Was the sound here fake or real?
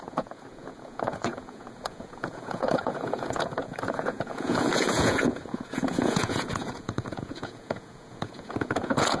fake